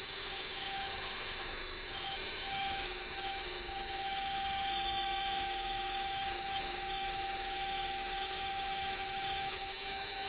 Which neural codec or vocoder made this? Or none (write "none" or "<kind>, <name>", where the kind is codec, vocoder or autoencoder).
autoencoder, DAC-VAE